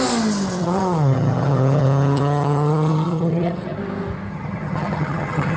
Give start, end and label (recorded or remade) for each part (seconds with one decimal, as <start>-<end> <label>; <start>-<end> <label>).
0.0-0.6 recorded; 0.6-3.8 remade; 3.8-4.3 recorded; 4.3-5.6 remade